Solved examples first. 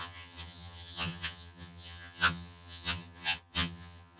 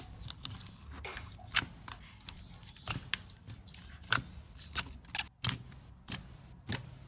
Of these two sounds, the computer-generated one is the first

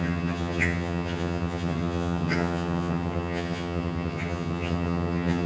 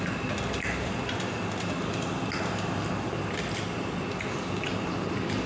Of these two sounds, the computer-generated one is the first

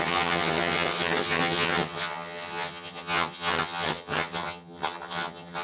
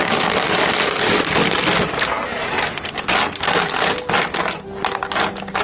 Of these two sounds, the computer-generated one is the first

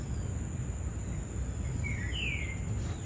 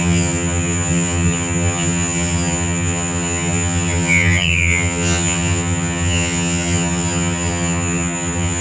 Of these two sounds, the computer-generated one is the second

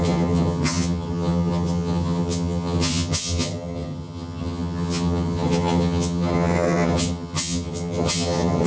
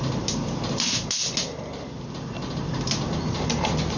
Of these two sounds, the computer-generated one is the first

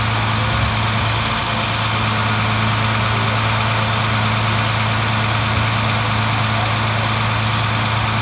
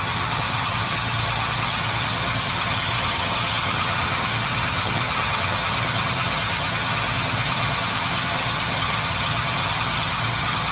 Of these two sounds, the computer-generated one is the second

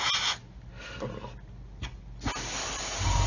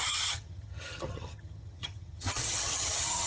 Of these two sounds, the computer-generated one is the second